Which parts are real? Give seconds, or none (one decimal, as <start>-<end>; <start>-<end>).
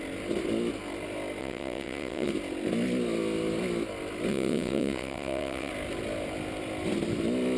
0.0-1.4; 2.3-4.3; 5.7-7.6